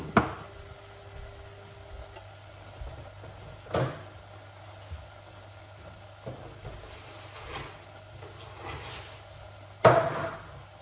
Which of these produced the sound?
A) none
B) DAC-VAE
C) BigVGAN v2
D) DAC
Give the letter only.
A